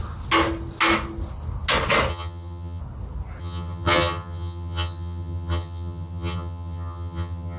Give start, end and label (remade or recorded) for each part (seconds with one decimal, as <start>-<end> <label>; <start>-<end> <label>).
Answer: 0.0-2.1 recorded; 2.1-2.8 remade; 2.8-3.4 recorded; 3.4-7.6 remade